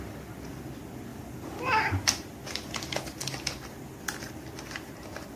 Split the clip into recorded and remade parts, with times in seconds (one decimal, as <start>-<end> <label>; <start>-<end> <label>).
0.0-1.1 recorded; 1.1-4.3 remade; 4.3-5.4 recorded